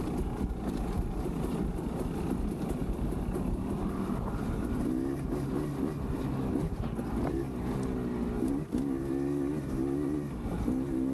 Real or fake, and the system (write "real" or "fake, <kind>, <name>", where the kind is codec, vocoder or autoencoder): real